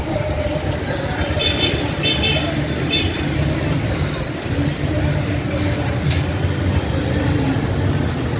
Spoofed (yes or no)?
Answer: no